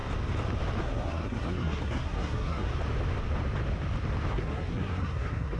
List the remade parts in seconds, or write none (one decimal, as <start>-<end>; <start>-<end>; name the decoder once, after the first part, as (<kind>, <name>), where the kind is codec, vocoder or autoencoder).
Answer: 0.8-2.7 (codec, SNAC); 4.3-5.6